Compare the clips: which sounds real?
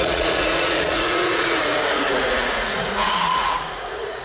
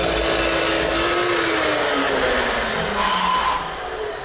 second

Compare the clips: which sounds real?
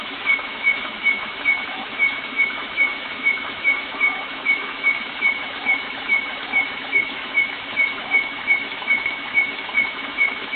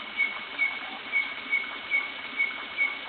second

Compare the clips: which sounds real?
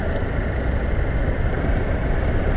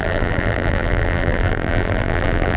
first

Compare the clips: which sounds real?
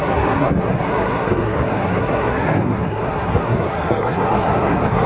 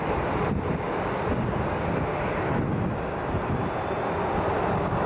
second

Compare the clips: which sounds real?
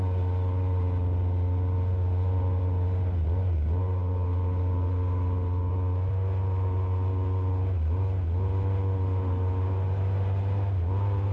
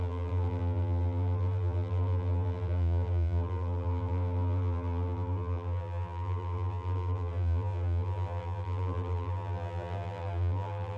first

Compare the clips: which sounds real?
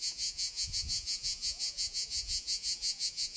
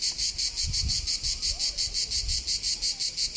second